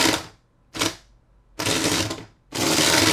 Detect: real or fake real